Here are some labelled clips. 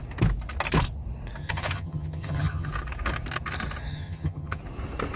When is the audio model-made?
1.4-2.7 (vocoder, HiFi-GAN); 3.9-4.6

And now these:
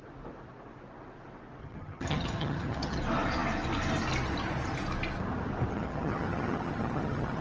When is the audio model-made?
1.6-3.0 (vocoder, HiFi-GAN); 5.7-7.4

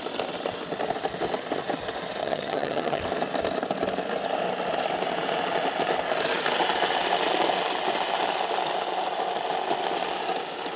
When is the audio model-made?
2.2-3.0 (vocoder, HiFi-GAN)

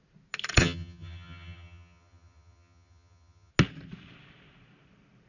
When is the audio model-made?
0.6-3.5 (vocoder, HiFi-GAN)

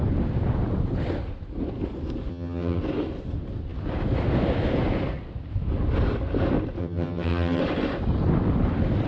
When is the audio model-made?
2.3-2.8 (vocoder, HiFi-GAN); 6.8-7.6

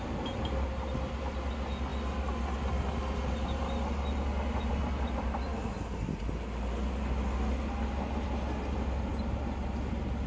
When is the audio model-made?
none